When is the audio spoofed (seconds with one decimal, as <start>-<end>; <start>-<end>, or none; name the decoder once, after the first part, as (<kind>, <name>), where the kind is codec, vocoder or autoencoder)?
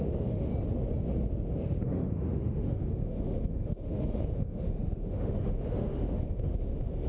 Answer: 0.0-0.5 (autoencoder, DAC-VAE); 1.6-7.1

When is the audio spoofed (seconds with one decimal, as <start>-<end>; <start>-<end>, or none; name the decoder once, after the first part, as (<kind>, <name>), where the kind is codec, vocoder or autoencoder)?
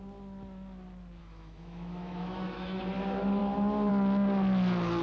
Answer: 1.2-2.8 (autoencoder, DAC-VAE)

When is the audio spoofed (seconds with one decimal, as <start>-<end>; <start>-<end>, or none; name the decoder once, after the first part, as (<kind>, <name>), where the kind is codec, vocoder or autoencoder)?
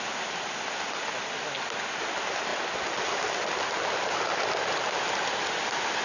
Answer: none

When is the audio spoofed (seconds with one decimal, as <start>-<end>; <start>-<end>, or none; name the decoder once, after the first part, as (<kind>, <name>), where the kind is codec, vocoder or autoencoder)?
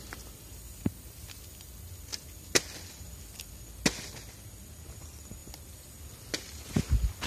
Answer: none